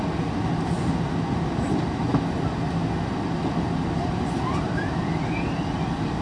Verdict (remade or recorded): recorded